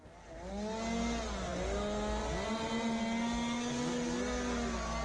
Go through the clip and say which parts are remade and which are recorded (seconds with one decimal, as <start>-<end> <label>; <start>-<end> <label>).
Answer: 0.0-5.0 recorded